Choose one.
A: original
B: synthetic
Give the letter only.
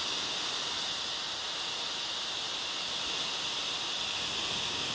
A